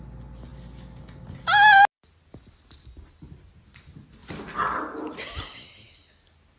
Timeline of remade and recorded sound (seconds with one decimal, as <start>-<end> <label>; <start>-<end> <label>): 0.0-6.6 recorded